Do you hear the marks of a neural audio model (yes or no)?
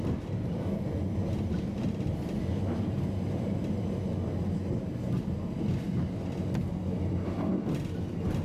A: no